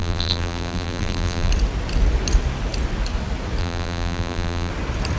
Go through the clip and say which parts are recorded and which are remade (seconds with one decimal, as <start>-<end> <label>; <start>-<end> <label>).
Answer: 0.0-1.5 remade; 1.5-3.6 recorded; 3.6-4.7 remade; 4.7-5.2 recorded

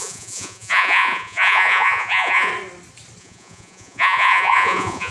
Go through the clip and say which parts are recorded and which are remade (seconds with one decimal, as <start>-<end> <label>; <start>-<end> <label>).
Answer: 0.0-2.5 remade; 2.5-3.2 recorded; 3.2-5.1 remade

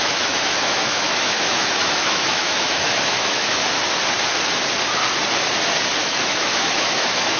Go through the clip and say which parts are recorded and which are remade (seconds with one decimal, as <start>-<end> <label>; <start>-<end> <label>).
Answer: 0.0-3.6 remade; 3.6-6.0 recorded; 6.0-7.4 remade

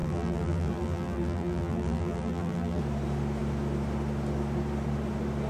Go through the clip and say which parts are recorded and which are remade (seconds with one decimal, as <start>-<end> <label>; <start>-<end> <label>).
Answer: 0.0-2.8 remade; 2.8-5.5 recorded

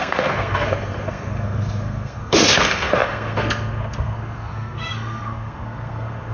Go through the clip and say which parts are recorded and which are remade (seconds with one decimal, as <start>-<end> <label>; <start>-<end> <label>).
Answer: 0.0-6.3 remade

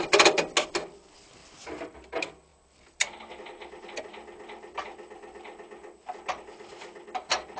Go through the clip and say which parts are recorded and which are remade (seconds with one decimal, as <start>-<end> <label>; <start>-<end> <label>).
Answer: 0.0-7.6 recorded

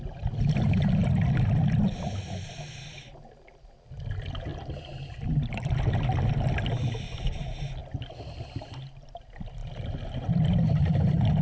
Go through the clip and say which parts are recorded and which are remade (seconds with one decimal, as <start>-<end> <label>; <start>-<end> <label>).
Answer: 0.0-1.0 recorded; 1.0-2.5 remade; 2.5-4.5 recorded; 4.5-6.7 remade; 6.7-9.6 recorded; 9.6-10.9 remade; 10.9-11.4 recorded